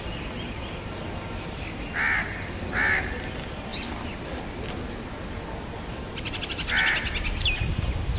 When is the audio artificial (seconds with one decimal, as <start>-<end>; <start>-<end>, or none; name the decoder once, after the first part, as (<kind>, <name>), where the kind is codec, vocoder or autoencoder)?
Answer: none